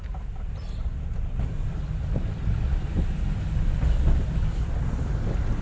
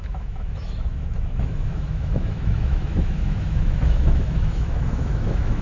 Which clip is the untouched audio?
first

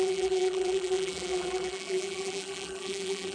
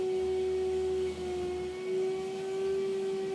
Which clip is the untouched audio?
second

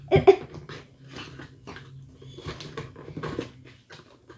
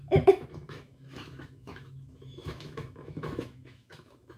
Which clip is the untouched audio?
first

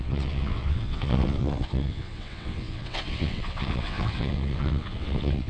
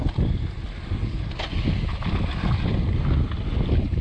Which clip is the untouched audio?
second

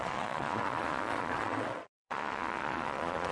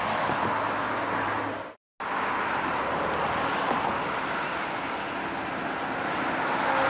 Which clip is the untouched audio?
second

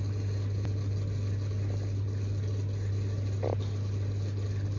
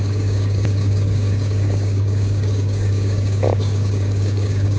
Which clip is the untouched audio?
first